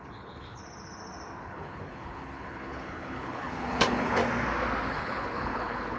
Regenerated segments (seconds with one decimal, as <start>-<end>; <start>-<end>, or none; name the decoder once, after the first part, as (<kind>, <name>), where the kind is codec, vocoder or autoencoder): 0.0-0.6 (codec, HILCodec); 1.4-4.2; 4.9-6.0